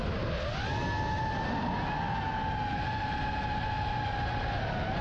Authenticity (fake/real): real